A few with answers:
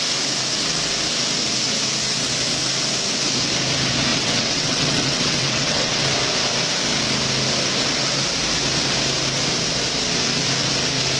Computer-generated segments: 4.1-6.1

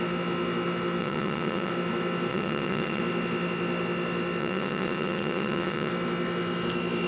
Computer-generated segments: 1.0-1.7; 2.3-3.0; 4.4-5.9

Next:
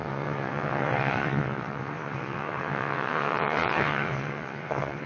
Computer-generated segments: 0.0-5.1

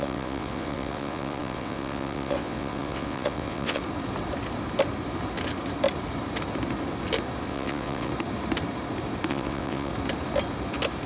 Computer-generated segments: 0.0-3.8; 7.5-8.1; 9.3-9.9

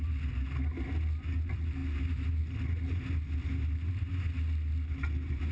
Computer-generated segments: none